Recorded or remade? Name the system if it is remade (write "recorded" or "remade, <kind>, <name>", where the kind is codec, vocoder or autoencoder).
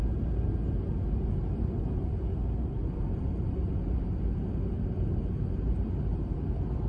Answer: recorded